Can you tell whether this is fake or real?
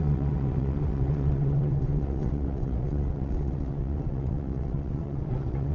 fake